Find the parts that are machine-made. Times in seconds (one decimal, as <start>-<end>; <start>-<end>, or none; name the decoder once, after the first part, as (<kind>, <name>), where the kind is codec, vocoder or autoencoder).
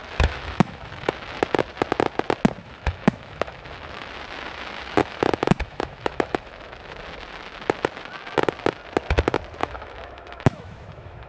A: 0.0-1.1 (autoencoder, DAC-VAE); 2.6-4.1; 5.0-7.0; 9.6-11.3